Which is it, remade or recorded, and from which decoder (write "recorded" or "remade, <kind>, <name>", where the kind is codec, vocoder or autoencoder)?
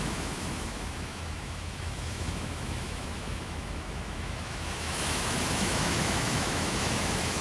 remade, autoencoder, DAC-VAE